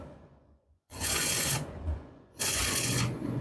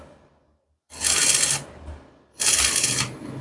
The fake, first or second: first